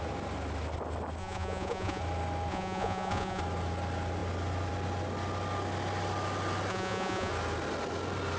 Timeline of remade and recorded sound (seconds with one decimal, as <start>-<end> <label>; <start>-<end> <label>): 0.0-1.2 recorded; 1.2-2.0 remade; 2.0-2.5 recorded; 2.5-3.4 remade; 3.4-6.7 recorded; 6.7-7.3 remade; 7.3-8.4 recorded